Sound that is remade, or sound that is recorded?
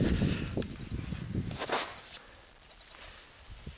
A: recorded